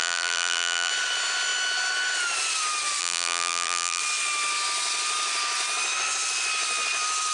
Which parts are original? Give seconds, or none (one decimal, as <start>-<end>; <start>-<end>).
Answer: 0.9-3.0; 4.0-7.3